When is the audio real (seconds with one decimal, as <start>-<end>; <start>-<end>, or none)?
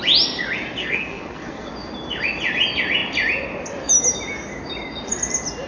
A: 0.0-0.8; 1.7-5.7